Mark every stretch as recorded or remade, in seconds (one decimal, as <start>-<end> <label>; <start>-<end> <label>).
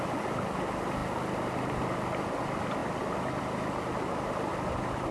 0.0-5.1 recorded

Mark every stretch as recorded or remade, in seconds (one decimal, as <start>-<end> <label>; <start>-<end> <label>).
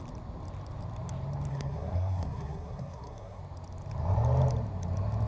0.0-1.5 recorded; 1.5-3.4 remade; 3.4-5.3 recorded